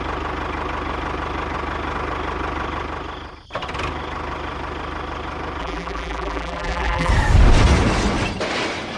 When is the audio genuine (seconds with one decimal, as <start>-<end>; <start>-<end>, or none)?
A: 0.0-5.6; 7.1-9.0